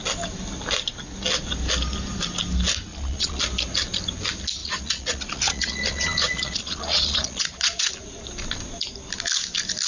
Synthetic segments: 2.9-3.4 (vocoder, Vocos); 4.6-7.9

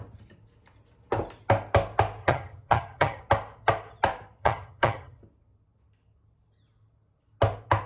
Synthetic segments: 2.2-3.2 (vocoder, HiFi-GAN); 4.4-5.2

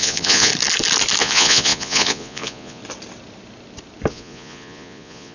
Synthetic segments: 0.0-0.5 (vocoder, Vocos); 1.2-2.8; 4.1-5.3

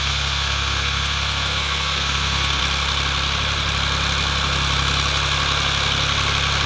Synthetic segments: 0.0-2.6 (codec, SNAC)